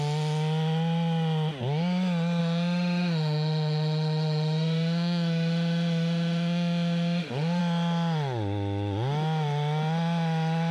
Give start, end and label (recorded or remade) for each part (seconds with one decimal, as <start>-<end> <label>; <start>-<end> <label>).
0.0-2.4 recorded; 2.4-7.6 remade; 7.6-10.7 recorded